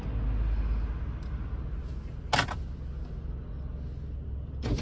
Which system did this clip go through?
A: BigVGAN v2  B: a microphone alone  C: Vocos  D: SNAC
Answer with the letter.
B